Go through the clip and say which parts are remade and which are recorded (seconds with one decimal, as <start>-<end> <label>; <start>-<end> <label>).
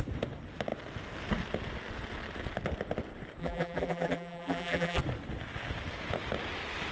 0.0-3.4 recorded; 3.4-5.0 remade; 5.0-6.9 recorded